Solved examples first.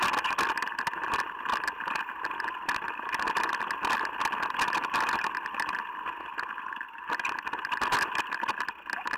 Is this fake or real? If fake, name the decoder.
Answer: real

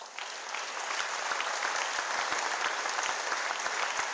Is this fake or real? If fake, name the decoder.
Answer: real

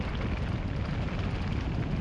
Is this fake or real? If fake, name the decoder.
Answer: real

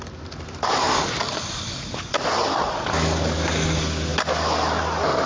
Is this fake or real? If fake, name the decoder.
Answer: real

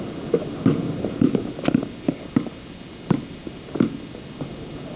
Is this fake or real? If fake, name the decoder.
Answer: real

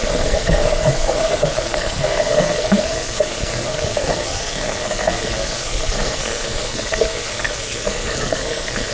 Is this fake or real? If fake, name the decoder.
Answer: fake, codec, SNAC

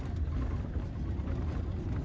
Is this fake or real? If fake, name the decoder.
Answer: real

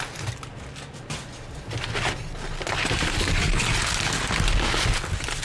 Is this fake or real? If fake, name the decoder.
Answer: real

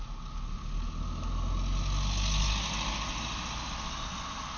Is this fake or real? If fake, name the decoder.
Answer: real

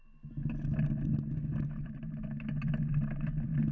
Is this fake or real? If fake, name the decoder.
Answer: real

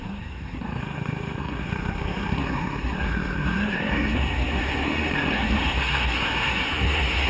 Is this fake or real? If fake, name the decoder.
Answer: fake, codec, SNAC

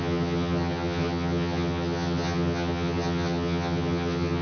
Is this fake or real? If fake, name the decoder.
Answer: fake, vocoder, HiFi-GAN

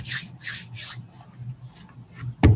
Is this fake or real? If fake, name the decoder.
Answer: real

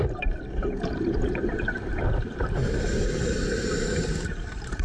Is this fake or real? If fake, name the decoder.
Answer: fake, vocoder, BigVGAN v2